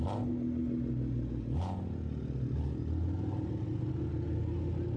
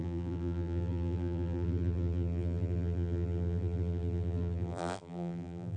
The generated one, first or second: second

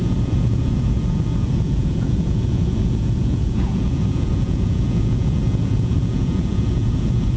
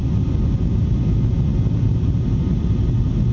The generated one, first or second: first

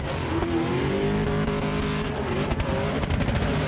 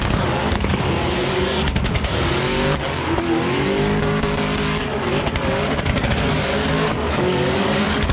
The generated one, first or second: second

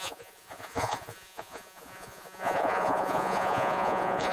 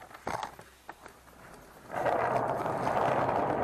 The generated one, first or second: first